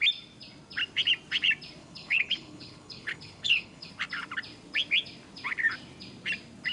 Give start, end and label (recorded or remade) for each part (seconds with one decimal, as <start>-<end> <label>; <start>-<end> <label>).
0.0-1.8 recorded; 1.8-3.9 remade; 3.9-6.7 recorded